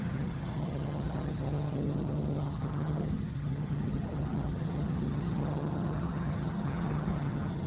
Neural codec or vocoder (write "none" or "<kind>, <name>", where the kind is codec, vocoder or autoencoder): vocoder, HiFi-GAN